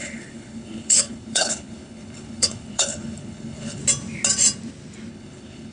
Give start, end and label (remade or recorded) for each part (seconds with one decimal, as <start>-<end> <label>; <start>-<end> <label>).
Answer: 0.0-3.8 remade; 3.8-5.1 recorded; 5.1-5.7 remade